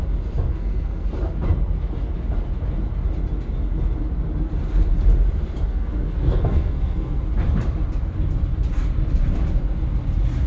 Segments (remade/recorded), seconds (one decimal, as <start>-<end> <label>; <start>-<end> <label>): 0.0-0.5 recorded; 0.5-1.1 remade; 1.1-5.7 recorded; 5.7-7.2 remade; 7.2-10.5 recorded